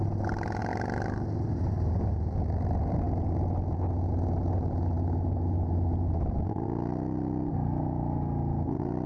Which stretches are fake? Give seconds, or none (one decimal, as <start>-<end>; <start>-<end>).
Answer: none